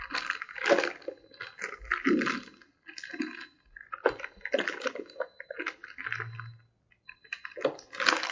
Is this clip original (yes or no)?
yes